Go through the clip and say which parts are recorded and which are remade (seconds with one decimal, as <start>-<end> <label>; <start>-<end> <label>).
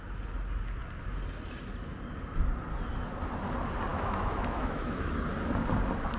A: 0.0-3.9 recorded; 3.9-5.1 remade; 5.1-6.2 recorded